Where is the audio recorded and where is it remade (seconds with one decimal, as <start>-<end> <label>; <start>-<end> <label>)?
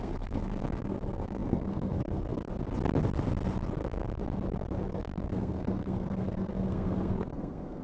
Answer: 0.0-2.5 remade; 2.5-3.8 recorded; 3.8-4.2 remade; 4.2-4.9 recorded; 4.9-7.8 remade